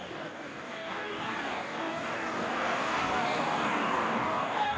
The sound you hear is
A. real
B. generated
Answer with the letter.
B